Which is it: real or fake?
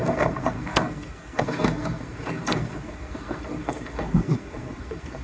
fake